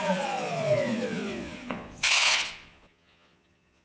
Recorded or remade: remade